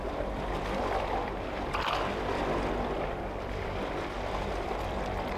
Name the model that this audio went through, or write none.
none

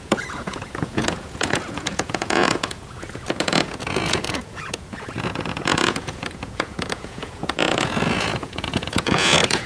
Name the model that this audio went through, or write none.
vocoder, Vocos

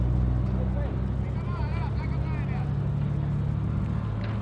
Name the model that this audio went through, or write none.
none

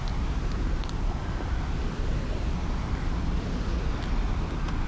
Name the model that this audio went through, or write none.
none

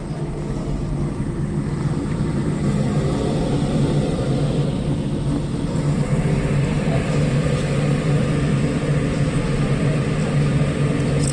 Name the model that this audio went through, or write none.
none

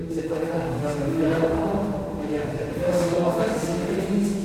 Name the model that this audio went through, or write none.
autoencoder, DAC-VAE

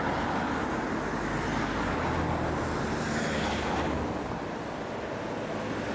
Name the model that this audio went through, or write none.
none